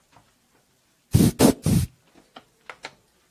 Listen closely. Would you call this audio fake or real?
real